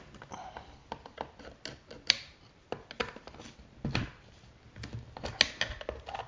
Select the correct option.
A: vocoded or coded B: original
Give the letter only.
B